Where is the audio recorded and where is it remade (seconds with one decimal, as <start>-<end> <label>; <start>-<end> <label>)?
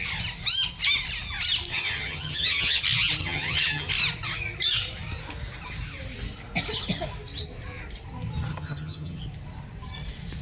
0.0-1.7 recorded; 1.7-2.8 remade; 2.8-3.2 recorded; 3.2-3.9 remade; 3.9-8.5 recorded; 8.5-9.2 remade; 9.2-10.4 recorded